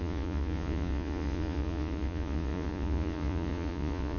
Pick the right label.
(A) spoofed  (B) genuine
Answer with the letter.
A